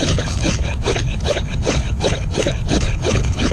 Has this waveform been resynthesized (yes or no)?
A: yes